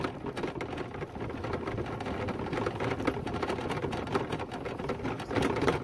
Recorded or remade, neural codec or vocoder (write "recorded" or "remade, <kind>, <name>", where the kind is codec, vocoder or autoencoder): recorded